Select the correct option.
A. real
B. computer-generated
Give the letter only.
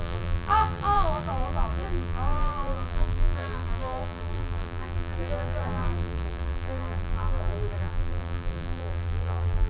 B